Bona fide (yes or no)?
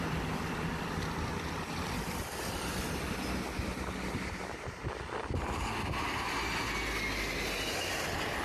yes